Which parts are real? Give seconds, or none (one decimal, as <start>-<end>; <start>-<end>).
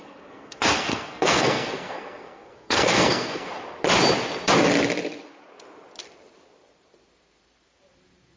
3.5-8.4